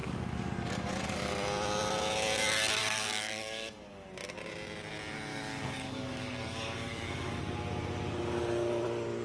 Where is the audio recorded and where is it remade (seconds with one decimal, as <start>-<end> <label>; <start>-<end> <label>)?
0.0-1.3 remade; 1.3-2.8 recorded; 2.8-4.1 remade; 4.1-5.3 recorded; 5.3-7.4 remade; 7.4-9.2 recorded